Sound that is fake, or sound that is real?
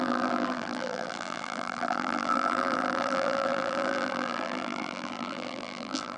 fake